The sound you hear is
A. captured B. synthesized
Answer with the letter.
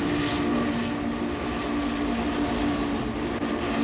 A